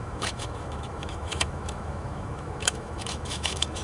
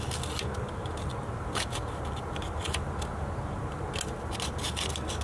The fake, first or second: first